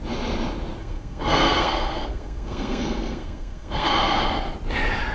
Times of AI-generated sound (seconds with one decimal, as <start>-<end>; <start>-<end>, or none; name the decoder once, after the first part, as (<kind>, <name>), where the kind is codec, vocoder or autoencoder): 0.8-3.9 (codec, SNAC)